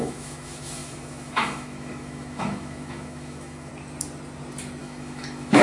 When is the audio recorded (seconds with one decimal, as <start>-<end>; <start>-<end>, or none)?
3.7-4.8